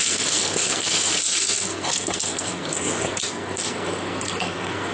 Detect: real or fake fake